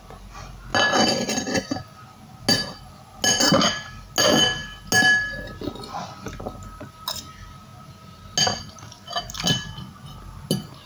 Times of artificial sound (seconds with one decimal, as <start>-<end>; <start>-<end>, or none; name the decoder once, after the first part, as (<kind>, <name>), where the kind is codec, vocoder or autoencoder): none